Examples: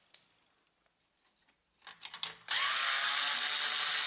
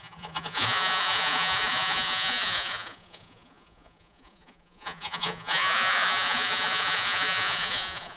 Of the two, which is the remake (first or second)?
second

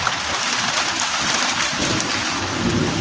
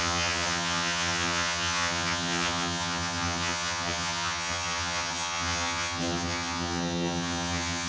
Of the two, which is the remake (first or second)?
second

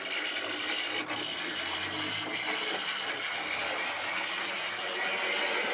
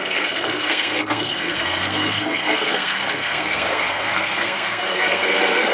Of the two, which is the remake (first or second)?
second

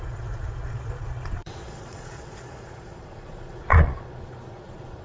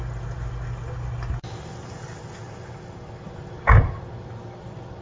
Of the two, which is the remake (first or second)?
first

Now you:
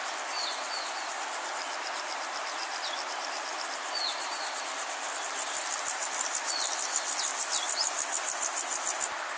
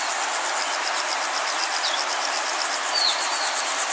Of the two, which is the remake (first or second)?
first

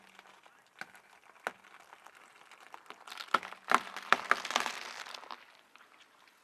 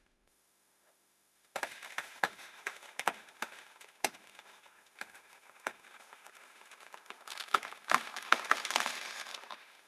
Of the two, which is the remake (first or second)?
second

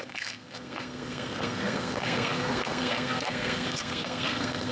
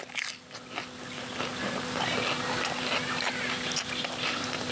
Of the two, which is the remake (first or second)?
first